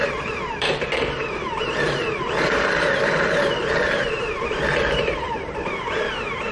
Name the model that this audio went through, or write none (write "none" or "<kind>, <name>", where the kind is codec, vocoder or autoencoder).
vocoder, BigVGAN v2